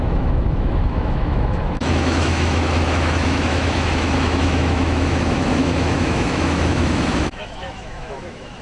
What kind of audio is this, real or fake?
fake